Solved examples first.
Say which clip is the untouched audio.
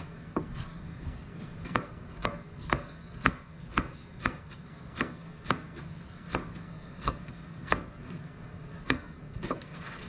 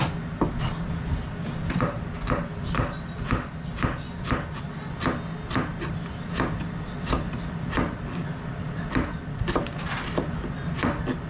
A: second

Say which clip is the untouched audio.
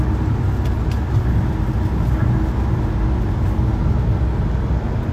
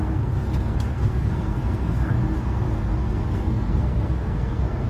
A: first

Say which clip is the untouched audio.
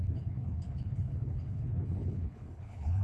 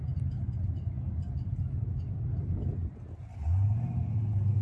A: second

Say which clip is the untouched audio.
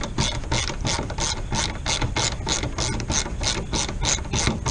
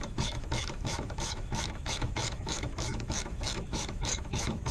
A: first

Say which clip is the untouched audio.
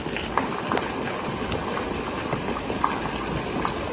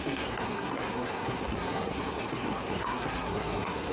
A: first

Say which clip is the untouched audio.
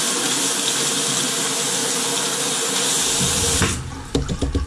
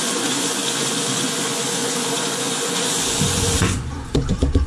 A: first